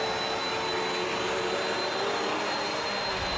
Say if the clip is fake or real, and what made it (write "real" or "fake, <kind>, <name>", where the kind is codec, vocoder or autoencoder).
real